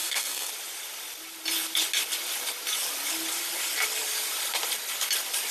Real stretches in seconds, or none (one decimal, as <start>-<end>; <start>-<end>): 0.5-5.5

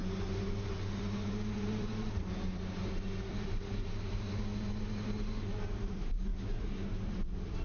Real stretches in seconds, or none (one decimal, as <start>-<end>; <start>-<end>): none

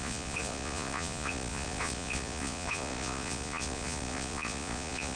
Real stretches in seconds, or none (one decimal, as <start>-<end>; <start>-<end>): none

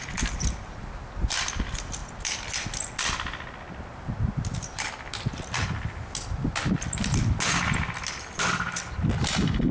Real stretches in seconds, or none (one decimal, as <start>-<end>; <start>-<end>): 0.0-9.7

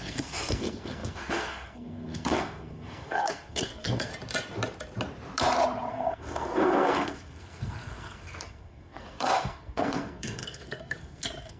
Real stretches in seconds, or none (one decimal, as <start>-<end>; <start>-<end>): 4.1-5.9

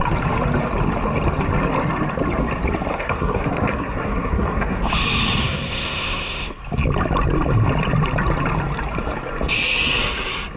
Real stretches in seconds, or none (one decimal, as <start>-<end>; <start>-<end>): 0.0-2.9; 4.8-5.4; 6.6-10.6

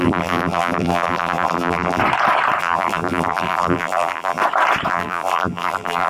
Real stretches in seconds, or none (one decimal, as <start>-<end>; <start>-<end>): 2.0-2.6; 4.4-4.9

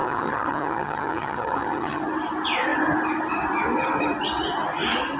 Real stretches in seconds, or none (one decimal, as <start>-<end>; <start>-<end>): 2.0-5.2